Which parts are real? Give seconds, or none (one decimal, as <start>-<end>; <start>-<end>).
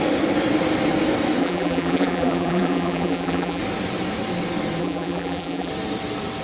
0.0-1.4; 3.6-4.8; 5.7-6.4